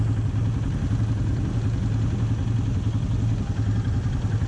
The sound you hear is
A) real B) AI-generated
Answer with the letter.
A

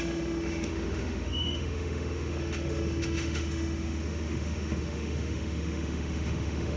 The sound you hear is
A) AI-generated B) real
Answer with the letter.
A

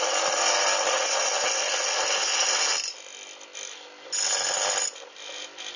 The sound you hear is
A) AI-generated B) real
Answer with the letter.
B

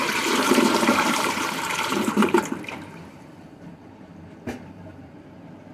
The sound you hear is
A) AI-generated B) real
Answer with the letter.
A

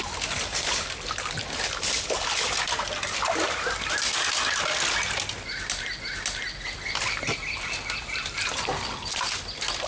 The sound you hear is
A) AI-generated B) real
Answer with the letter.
B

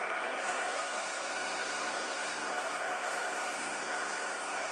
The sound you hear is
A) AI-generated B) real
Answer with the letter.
A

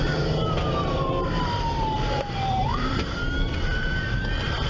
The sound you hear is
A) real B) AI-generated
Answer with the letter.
B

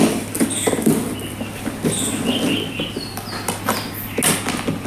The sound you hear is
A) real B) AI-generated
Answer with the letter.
A